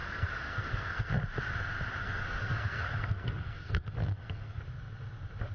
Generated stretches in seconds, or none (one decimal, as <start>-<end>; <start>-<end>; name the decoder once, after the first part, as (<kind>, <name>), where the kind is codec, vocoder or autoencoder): 0.0-1.1 (codec, SNAC); 2.0-4.6